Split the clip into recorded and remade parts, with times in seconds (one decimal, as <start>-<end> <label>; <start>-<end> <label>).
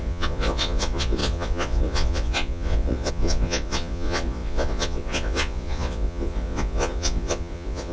0.0-7.9 remade